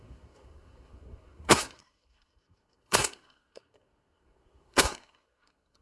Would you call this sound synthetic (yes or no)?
yes